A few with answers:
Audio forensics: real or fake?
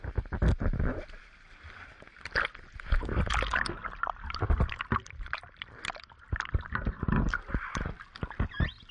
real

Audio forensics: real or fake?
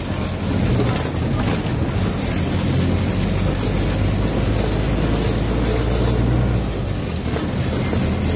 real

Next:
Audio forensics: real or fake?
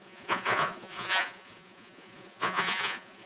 fake